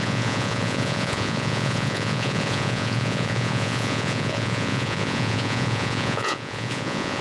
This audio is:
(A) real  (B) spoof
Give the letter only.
B